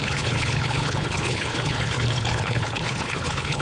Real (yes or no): no